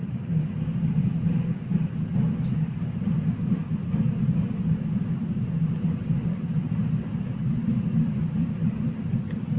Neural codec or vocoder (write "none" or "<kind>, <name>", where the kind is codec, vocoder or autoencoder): none